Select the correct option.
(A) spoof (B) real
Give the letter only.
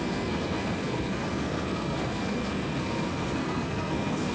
A